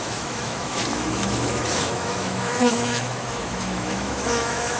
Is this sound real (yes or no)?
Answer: no